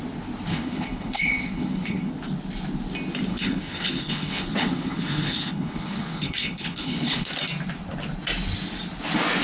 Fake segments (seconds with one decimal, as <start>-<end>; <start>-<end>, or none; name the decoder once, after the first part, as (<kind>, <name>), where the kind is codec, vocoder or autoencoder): 0.5-2.1 (codec, HILCodec); 3.3-7.3